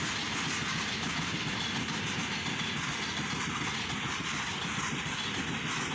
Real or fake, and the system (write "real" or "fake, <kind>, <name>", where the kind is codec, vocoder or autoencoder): real